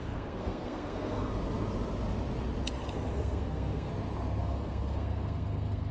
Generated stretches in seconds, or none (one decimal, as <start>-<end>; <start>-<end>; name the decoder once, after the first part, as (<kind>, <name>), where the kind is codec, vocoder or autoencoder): 0.0-1.3 (codec, SNAC); 3.1-3.9; 4.4-5.9